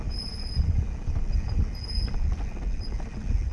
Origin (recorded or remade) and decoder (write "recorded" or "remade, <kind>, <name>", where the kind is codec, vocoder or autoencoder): recorded